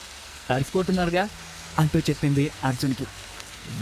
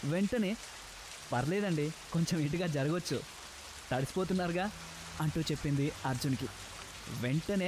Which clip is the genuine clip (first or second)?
second